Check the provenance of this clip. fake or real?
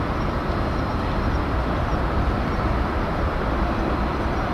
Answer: real